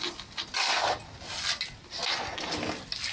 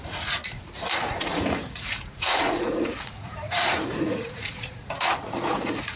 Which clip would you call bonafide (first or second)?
first